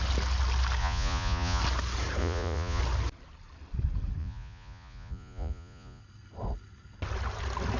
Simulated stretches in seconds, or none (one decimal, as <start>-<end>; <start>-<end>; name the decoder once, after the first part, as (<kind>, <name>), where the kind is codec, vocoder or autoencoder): 0.8-1.6 (vocoder, Vocos); 2.2-2.8; 4.2-6.0